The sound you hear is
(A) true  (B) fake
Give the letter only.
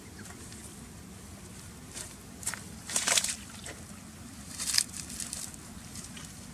B